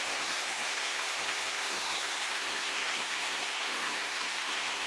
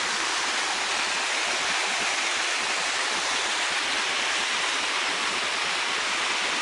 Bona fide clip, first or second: second